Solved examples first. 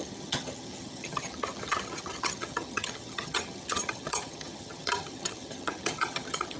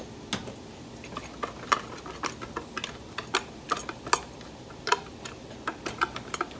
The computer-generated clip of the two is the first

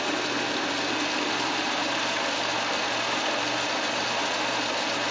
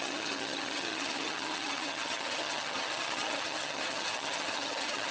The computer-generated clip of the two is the second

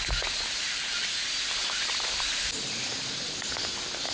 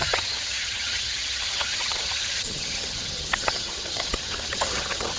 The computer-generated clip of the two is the second